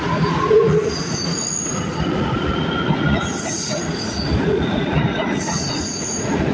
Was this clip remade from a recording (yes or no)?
yes